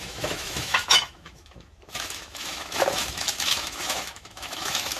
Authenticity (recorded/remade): remade